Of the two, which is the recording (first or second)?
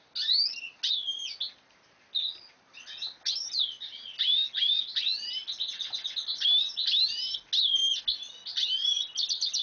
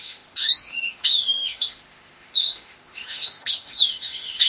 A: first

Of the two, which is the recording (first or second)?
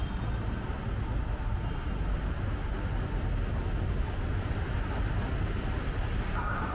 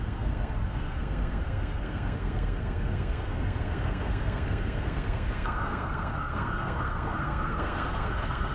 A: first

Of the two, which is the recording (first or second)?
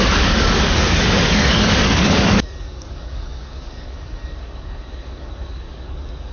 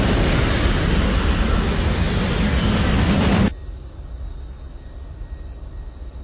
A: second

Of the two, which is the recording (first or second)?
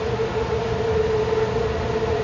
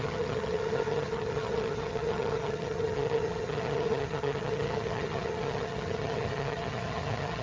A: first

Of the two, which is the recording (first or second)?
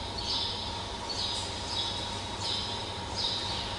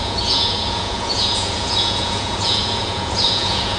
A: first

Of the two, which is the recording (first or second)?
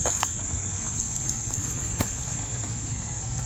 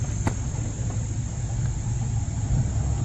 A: second